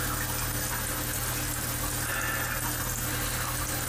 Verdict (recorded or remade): recorded